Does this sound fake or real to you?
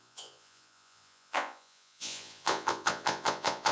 fake